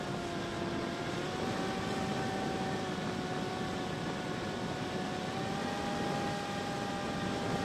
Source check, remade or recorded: recorded